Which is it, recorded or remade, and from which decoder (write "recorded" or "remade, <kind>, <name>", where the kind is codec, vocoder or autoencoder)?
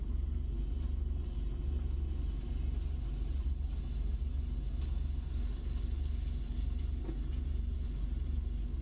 recorded